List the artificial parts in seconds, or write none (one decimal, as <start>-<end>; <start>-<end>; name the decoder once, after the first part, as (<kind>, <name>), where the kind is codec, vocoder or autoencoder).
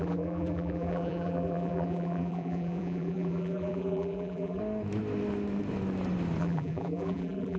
0.0-4.6 (vocoder, BigVGAN v2); 6.4-7.6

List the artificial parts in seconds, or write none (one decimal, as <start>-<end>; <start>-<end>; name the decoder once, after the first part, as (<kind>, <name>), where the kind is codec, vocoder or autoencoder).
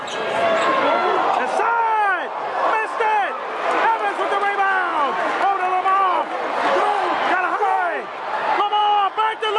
none